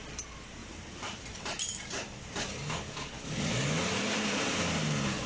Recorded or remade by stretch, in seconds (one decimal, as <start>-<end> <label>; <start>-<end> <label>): 0.0-0.6 recorded; 0.6-2.6 remade; 2.6-5.3 recorded